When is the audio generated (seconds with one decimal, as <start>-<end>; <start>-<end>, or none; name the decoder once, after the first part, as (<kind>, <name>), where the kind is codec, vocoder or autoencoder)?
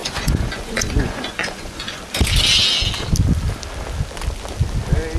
0.0-2.0 (vocoder, Vocos)